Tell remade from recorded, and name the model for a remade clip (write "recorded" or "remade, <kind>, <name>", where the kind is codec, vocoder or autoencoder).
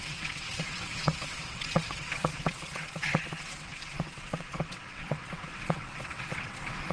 remade, vocoder, WaveNeXt